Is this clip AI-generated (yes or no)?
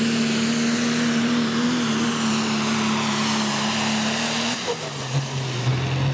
no